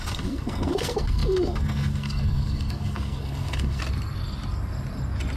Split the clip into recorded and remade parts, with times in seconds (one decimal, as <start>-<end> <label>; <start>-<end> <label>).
0.0-3.8 remade; 3.8-5.4 recorded